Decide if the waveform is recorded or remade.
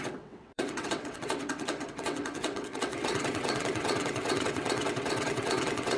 remade